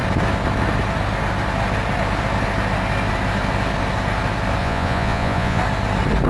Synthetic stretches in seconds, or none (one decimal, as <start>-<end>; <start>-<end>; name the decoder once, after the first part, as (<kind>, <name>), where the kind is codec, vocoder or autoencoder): 4.6-5.6 (vocoder, Vocos)